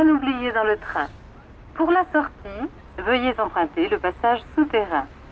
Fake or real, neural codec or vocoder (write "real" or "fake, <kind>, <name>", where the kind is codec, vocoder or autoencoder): real